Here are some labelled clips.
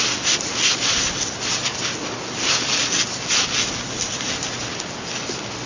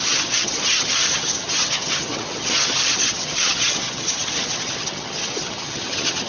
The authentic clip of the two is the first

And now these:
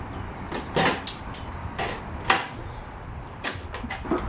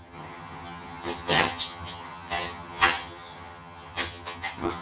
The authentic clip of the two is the first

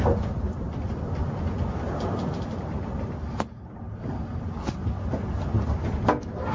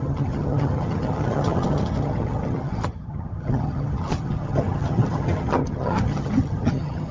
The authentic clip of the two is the first